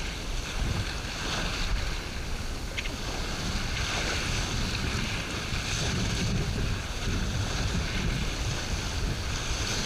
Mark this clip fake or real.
real